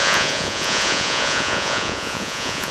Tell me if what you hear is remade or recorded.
remade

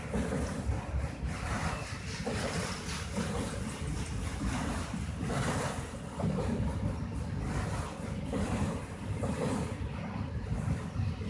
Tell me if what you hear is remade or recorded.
recorded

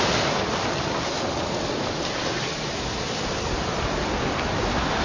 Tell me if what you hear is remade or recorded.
recorded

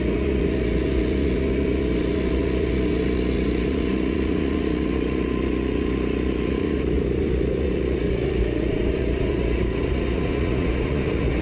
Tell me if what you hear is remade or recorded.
remade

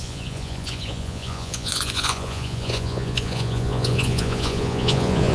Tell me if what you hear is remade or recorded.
remade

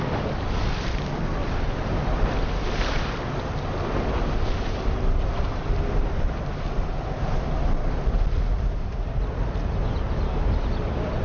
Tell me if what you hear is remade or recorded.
recorded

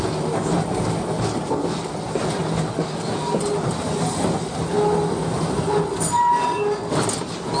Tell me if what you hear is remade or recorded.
recorded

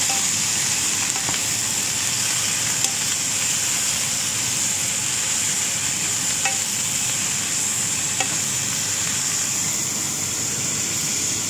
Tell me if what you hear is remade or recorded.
recorded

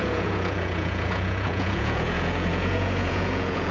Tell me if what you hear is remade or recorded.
remade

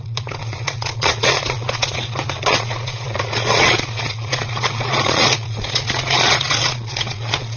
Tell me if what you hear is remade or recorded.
remade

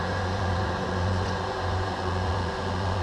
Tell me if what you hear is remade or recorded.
remade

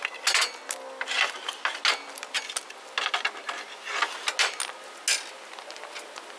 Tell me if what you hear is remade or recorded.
recorded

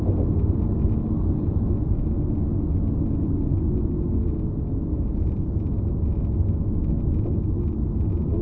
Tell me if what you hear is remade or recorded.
recorded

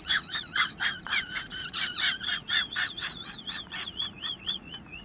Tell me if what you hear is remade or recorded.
remade